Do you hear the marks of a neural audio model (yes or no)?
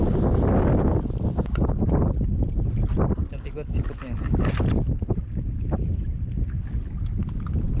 no